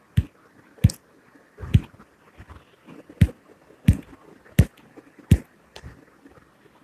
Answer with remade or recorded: recorded